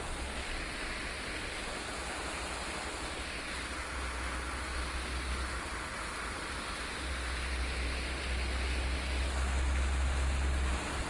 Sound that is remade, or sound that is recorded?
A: recorded